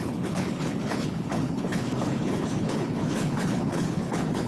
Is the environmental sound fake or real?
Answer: fake